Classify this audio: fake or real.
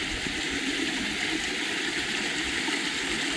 real